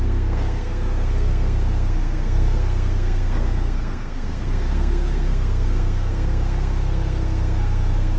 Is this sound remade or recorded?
remade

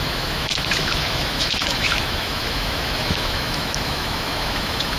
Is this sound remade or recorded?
remade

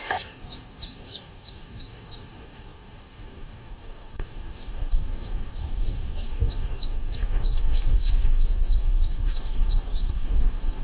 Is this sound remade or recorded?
remade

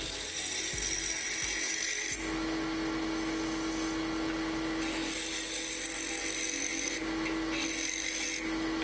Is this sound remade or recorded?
recorded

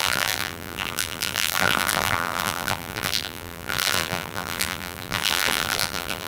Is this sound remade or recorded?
remade